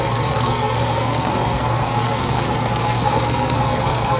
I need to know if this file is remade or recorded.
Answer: remade